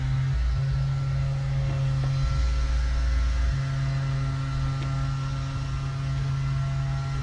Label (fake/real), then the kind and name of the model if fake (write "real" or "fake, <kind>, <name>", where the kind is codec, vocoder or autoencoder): real